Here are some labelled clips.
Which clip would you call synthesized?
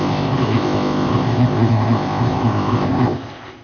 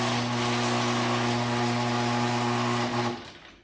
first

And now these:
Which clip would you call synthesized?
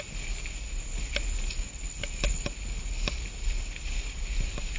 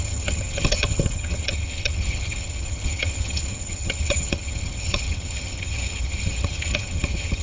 second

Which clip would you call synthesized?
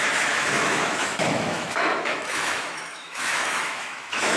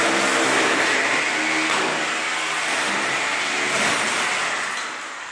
first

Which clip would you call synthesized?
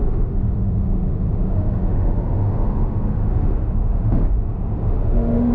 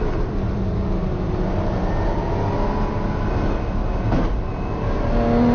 first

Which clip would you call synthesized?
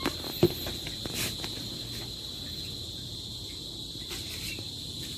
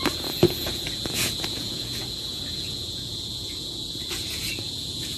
second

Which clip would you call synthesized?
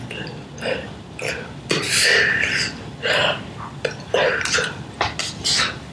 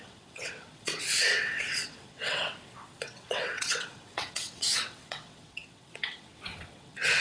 second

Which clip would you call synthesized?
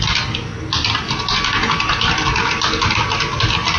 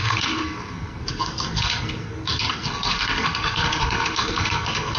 second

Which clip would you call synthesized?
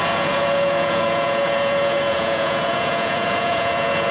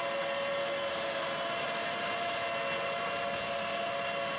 first